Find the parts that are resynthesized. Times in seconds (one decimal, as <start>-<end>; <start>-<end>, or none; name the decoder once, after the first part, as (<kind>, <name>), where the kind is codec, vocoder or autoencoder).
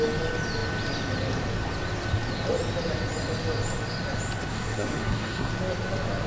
4.5-5.5 (codec, SNAC)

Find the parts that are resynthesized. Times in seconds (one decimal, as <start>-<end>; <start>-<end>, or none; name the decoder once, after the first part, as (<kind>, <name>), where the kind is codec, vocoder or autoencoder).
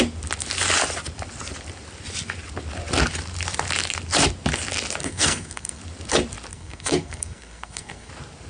5.0-5.8 (codec, SNAC); 6.5-8.1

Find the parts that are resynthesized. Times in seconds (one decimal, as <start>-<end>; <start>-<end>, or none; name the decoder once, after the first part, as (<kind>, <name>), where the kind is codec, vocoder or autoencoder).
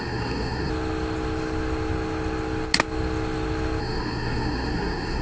0.0-0.7 (codec, SNAC); 3.8-5.2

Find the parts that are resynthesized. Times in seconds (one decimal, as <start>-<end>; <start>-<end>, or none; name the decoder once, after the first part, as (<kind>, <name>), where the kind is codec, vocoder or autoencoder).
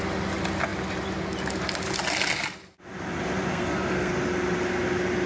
3.5-4.1 (codec, SNAC)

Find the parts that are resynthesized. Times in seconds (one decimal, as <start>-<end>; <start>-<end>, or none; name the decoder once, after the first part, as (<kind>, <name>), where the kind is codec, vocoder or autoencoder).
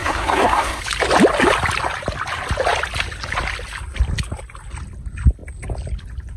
0.0-0.8 (codec, SNAC)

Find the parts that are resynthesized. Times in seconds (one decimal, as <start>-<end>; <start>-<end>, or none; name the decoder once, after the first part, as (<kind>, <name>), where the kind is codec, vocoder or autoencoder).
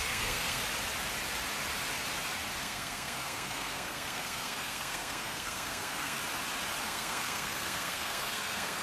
0.0-0.6 (codec, SNAC); 2.6-6.2; 6.8-8.8